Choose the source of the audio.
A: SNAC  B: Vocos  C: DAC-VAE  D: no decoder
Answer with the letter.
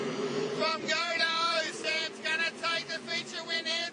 B